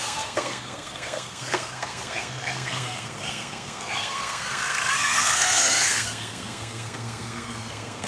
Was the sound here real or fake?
fake